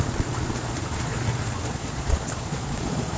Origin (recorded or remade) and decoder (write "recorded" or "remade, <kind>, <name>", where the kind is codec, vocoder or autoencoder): remade, vocoder, Vocos